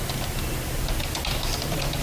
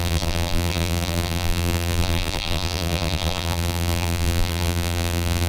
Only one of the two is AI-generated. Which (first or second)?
second